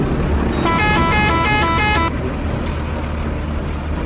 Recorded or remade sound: recorded